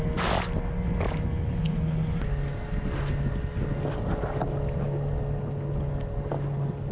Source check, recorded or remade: recorded